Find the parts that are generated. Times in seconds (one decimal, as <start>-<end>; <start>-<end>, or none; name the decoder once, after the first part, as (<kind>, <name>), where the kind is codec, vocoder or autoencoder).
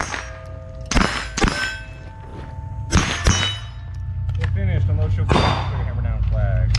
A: none